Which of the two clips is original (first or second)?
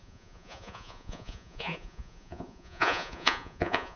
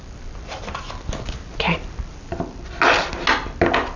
second